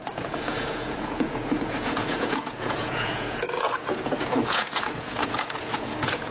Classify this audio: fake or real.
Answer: fake